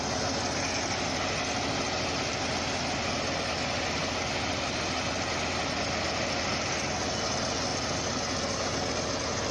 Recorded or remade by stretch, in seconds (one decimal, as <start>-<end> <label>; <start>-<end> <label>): 0.0-9.5 recorded